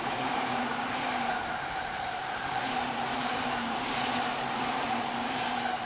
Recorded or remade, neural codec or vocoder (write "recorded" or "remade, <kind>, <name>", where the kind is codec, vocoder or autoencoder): remade, vocoder, BigVGAN v2